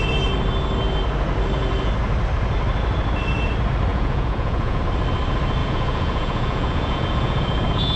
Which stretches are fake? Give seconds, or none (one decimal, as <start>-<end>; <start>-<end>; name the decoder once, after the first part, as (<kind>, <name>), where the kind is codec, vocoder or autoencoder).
3.9-4.8 (vocoder, Vocos); 5.6-8.0

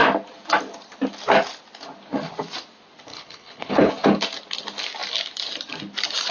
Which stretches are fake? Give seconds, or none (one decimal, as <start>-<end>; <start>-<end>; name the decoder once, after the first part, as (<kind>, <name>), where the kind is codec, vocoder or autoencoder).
3.1-3.9 (codec, HILCodec)

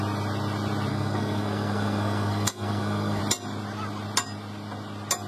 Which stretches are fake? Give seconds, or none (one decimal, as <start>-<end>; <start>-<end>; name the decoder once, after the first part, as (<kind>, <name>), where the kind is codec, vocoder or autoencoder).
0.9-3.2 (codec, SNAC)

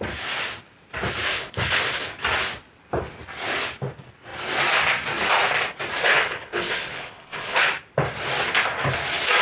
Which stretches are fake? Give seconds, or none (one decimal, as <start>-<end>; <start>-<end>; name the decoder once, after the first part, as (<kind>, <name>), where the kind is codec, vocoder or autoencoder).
1.3-1.8 (codec, HILCodec); 6.1-7.7

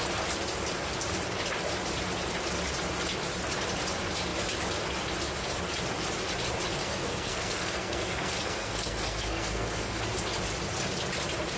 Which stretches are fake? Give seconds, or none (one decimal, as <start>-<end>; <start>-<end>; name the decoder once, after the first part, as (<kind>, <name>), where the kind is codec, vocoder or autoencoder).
6.8-10.0 (codec, SNAC)

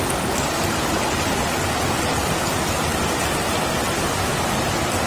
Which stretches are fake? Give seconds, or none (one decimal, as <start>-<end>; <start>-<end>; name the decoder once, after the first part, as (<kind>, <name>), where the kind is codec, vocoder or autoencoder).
none

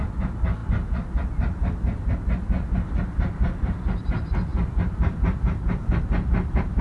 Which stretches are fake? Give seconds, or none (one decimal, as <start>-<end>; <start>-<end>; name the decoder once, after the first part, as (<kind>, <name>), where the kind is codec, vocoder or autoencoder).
none

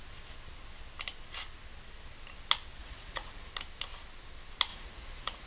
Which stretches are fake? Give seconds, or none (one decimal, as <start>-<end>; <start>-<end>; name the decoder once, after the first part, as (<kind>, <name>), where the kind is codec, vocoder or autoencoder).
2.8-3.5 (vocoder, Vocos); 4.7-5.5